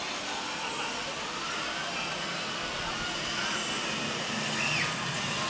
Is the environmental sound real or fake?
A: real